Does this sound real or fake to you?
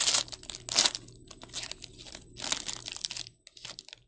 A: real